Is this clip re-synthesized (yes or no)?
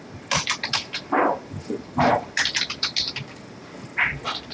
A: no